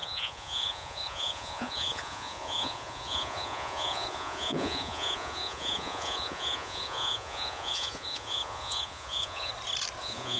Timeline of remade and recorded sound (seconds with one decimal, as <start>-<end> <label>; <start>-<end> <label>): 0.0-9.5 remade; 9.5-10.0 recorded; 10.0-10.4 remade